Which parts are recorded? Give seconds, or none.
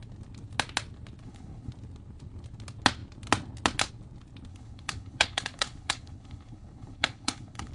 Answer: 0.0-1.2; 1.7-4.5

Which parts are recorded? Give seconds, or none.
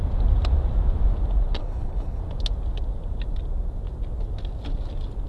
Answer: 0.0-1.6; 2.2-5.3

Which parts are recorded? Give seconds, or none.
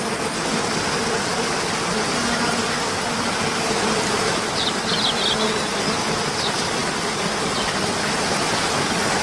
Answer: 0.0-9.2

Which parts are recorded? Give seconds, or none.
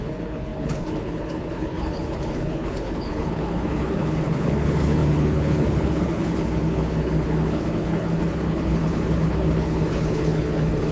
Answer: none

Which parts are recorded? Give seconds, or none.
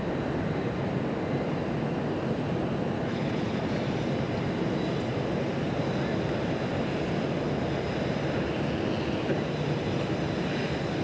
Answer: 0.0-3.1; 3.6-11.0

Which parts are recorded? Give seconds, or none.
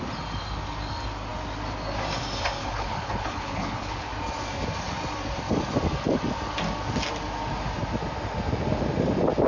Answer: 0.0-2.6; 4.1-9.5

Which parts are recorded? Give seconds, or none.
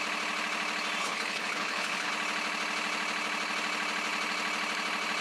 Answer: 0.0-1.0; 2.1-5.2